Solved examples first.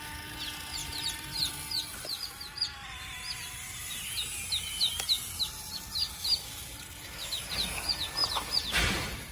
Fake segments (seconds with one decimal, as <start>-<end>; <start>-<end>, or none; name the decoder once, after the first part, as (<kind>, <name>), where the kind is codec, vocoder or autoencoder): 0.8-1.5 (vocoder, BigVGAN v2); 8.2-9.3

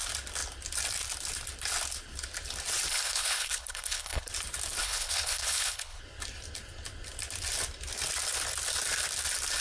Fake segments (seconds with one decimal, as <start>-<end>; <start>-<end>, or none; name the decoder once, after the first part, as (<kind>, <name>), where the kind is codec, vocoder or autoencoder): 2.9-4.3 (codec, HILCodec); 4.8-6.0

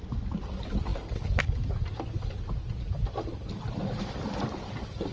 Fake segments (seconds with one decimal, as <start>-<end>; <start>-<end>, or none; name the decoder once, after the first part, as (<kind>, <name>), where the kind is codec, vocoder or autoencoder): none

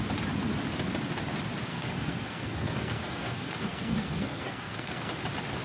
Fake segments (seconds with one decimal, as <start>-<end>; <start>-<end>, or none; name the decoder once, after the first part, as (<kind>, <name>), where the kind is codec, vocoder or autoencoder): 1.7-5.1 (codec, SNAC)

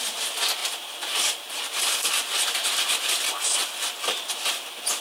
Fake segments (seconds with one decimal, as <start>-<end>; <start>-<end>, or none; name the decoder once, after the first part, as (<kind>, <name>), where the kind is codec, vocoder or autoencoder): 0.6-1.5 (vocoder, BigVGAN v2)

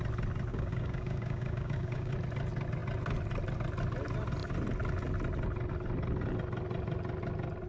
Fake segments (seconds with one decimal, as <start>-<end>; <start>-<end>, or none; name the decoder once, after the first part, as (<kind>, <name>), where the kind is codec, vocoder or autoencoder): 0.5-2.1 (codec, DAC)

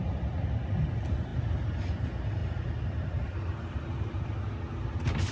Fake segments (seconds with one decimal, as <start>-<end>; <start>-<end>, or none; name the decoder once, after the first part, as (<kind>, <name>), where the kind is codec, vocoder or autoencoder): 2.4-4.3 (vocoder, BigVGAN v2)